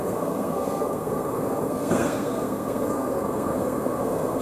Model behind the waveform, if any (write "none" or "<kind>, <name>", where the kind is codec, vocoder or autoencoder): codec, SNAC